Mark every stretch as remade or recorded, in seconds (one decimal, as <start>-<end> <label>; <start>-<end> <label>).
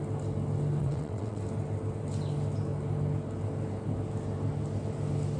0.0-0.8 recorded; 0.8-1.4 remade; 1.4-5.4 recorded